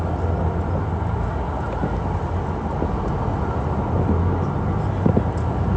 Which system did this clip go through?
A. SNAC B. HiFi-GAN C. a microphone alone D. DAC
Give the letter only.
C